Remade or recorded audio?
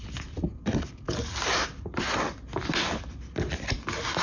recorded